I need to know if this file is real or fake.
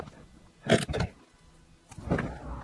real